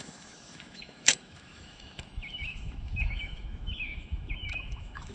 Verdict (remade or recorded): remade